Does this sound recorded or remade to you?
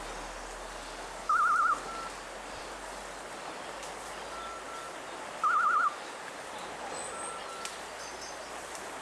recorded